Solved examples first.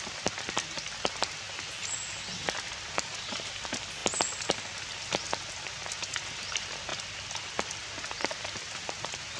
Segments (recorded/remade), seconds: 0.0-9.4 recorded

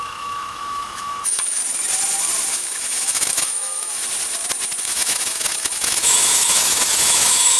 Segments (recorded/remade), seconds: 0.0-1.6 remade; 1.6-2.5 recorded; 2.5-4.0 remade; 4.0-4.8 recorded; 4.8-7.6 remade

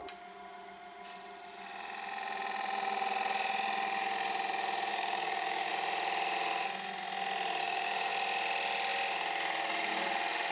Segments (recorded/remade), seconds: 0.0-4.9 recorded; 4.9-5.7 remade; 5.7-7.6 recorded; 7.6-8.1 remade; 8.1-10.5 recorded

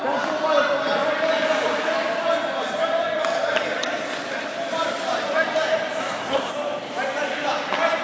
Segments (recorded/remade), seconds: 0.0-6.0 recorded; 6.0-6.5 remade; 6.5-8.0 recorded

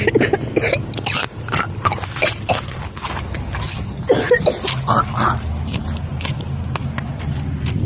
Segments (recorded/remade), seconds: 0.0-2.2 recorded; 2.2-2.8 remade; 2.8-7.9 recorded

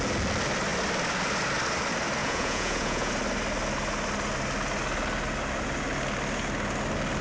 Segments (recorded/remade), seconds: 0.0-2.2 recorded; 2.2-3.1 remade; 3.1-7.2 recorded

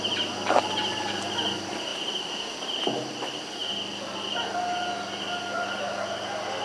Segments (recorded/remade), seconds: 0.0-6.6 recorded